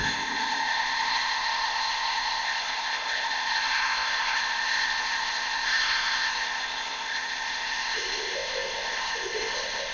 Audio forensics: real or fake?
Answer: fake